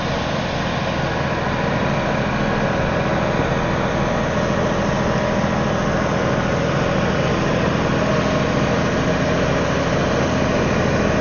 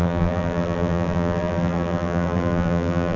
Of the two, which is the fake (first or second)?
second